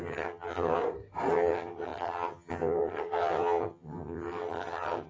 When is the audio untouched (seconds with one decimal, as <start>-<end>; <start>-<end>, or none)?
0.8-1.3